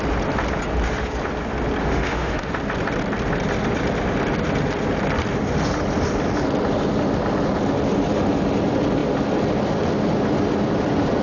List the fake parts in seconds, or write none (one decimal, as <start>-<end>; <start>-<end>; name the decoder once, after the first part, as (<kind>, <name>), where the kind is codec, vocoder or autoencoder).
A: 1.8-2.5 (autoencoder, DAC-VAE)